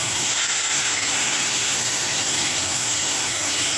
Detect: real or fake fake